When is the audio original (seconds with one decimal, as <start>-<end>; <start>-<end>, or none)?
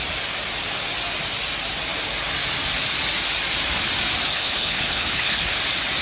0.0-4.3; 5.6-6.0